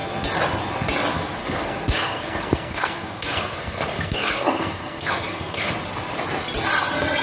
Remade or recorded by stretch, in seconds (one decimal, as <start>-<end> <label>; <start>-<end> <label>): 0.0-1.4 recorded; 1.4-5.7 remade; 5.7-7.2 recorded